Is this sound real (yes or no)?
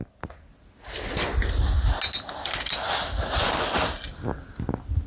yes